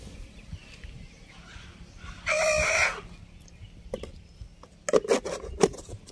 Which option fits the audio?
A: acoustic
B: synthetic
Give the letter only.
A